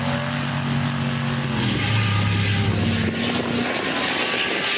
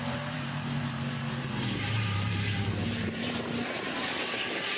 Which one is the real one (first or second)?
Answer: first